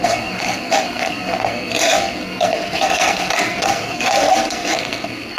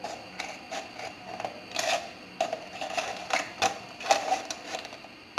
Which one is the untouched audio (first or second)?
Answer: second